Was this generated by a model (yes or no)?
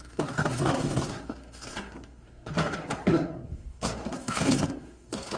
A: yes